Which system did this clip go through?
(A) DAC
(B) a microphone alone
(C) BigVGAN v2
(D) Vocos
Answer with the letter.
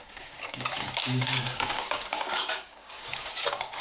A